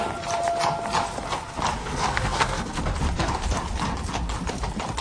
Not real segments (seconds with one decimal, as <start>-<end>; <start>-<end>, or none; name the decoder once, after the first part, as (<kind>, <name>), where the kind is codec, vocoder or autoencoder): 1.8-2.8 (codec, SNAC)